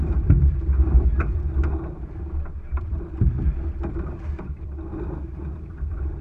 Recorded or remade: remade